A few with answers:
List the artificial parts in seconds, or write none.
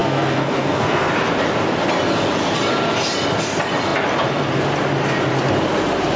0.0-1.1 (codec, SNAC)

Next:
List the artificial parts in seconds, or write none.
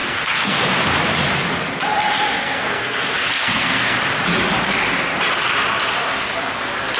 0.0-0.6 (codec, SNAC); 2.4-4.0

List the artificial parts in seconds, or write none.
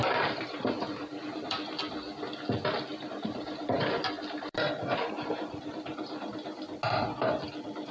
0.0-1.5 (vocoder, BigVGAN v2); 2.9-6.3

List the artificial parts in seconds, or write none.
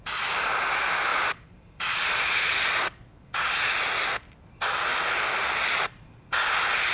1.1-3.7 (vocoder, BigVGAN v2)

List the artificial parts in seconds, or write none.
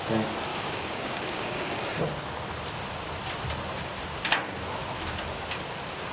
0.5-1.9 (codec, DAC)